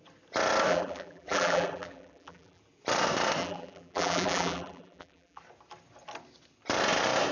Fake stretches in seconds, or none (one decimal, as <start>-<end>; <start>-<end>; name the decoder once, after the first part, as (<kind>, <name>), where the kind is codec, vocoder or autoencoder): 0.7-2.6 (vocoder, BigVGAN v2); 3.4-5.4